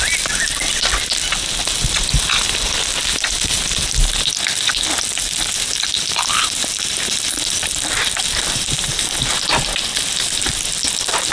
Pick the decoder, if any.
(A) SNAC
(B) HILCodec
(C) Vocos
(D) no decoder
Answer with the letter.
D